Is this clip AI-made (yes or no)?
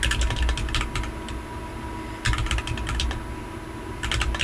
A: no